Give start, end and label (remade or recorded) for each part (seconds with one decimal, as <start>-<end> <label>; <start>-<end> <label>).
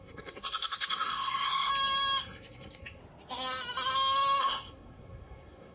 0.0-1.7 remade; 1.7-2.2 recorded; 2.2-3.0 remade; 3.0-4.4 recorded; 4.4-5.7 remade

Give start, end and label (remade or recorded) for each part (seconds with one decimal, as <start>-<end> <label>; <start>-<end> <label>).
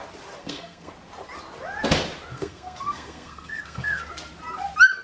0.0-0.4 recorded; 0.4-0.9 remade; 0.9-2.3 recorded; 2.3-4.0 remade; 4.0-5.0 recorded